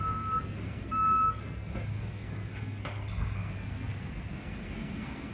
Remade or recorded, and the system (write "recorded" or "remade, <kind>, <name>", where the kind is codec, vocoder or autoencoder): remade, codec, SNAC